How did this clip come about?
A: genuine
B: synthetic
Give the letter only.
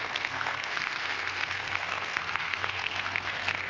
B